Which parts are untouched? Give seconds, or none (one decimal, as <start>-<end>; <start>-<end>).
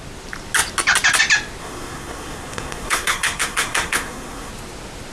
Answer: 0.0-1.6; 4.5-5.1